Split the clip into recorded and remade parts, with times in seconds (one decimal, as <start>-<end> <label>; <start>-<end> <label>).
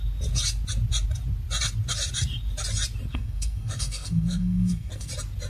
0.0-3.1 recorded; 3.1-5.1 remade; 5.1-5.5 recorded